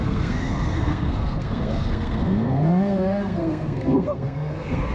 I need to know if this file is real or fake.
fake